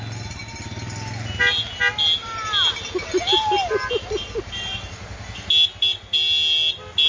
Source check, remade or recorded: recorded